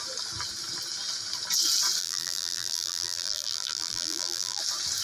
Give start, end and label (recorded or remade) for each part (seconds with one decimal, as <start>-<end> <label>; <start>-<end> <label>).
0.0-2.0 recorded; 2.0-4.6 remade; 4.6-5.0 recorded